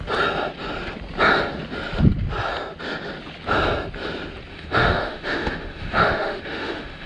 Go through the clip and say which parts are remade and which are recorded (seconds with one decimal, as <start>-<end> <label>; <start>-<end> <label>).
0.0-4.5 recorded; 4.5-7.1 remade